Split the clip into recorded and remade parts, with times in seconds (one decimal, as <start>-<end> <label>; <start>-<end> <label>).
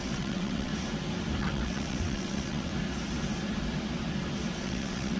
0.0-0.7 remade; 0.7-1.4 recorded; 1.4-2.7 remade; 2.7-4.6 recorded; 4.6-5.2 remade